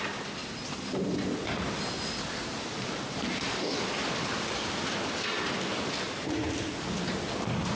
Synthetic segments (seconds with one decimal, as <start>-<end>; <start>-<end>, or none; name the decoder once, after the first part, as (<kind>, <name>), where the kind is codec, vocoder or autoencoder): 0.0-7.8 (vocoder, BigVGAN v2)